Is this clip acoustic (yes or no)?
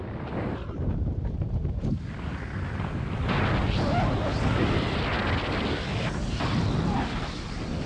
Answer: yes